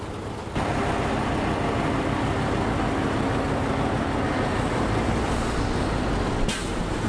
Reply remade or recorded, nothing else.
recorded